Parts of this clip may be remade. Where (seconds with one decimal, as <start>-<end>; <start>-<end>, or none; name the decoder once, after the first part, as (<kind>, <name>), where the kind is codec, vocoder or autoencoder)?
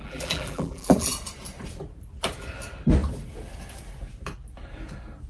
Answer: 0.0-1.1 (vocoder, BigVGAN v2)